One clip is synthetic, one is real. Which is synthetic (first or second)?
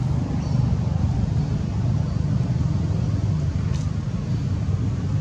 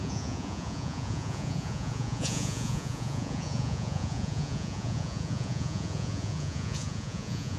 second